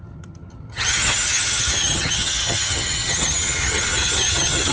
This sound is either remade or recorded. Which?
remade